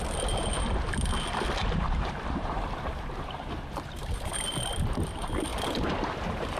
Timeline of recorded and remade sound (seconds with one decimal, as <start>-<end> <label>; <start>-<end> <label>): 0.0-1.6 recorded; 1.6-4.3 remade; 4.3-5.5 recorded; 5.5-6.6 remade